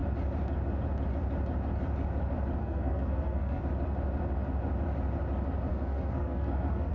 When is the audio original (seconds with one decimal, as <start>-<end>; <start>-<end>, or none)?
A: 0.0-2.6; 3.6-5.7